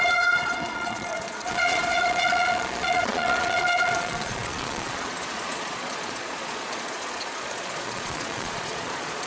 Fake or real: fake